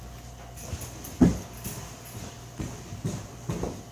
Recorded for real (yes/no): yes